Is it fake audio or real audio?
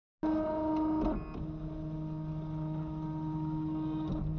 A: real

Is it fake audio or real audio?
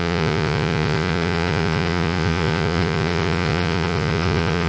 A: fake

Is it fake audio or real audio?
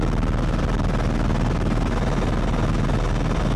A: real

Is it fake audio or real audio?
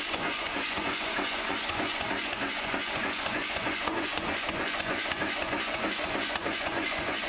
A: fake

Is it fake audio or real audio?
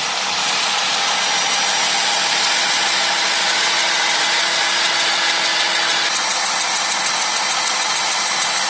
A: real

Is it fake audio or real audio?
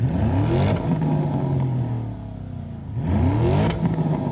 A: real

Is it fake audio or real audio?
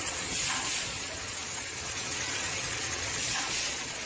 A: fake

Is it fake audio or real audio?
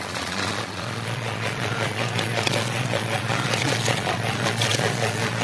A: fake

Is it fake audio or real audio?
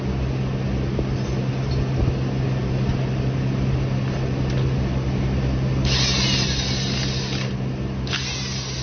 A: real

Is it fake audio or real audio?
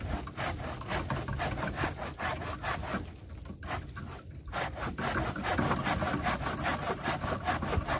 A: real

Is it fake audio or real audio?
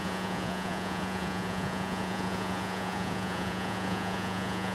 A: fake